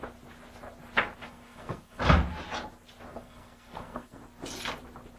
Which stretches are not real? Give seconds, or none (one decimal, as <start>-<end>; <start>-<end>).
1.2-2.0; 3.1-4.2